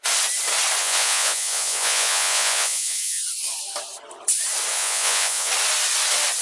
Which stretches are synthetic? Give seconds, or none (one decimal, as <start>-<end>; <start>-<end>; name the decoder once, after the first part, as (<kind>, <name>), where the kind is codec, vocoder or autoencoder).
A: 0.8-3.2 (vocoder, Vocos); 4.7-5.5